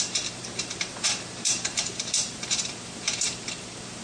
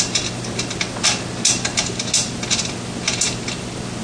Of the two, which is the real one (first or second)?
second